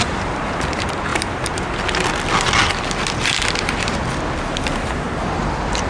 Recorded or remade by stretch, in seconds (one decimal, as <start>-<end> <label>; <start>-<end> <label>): 0.0-5.9 recorded